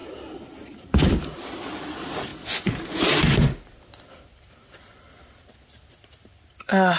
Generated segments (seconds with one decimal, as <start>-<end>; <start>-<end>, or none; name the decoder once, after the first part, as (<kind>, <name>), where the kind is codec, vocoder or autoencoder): none